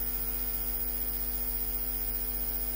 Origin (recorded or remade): recorded